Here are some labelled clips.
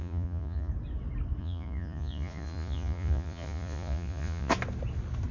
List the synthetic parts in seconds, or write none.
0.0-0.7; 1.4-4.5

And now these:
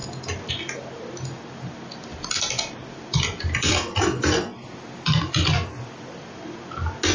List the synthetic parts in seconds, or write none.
2.1-6.4